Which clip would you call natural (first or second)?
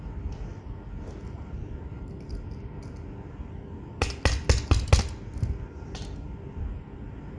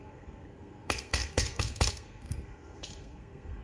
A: first